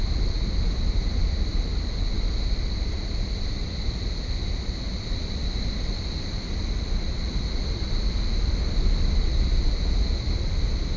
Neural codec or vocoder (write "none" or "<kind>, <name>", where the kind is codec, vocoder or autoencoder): none